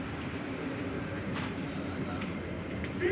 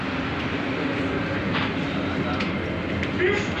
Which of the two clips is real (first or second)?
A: second